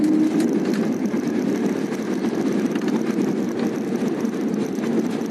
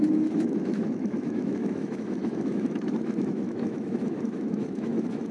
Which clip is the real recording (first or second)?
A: first